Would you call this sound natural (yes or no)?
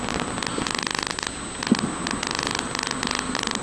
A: yes